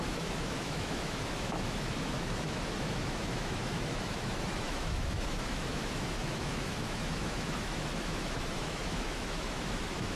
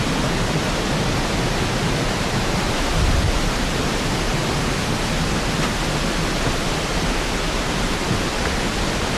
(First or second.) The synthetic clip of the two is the first